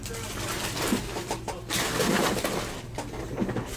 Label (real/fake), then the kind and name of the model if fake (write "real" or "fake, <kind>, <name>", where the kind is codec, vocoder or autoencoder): real